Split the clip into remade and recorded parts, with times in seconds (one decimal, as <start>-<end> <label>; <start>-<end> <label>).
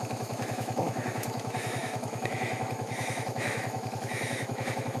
0.0-5.0 remade